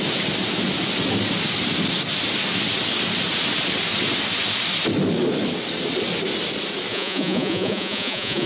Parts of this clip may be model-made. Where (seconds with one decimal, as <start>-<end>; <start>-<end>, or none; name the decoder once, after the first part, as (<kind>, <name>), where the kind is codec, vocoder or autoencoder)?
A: 6.9-8.5 (vocoder, Vocos)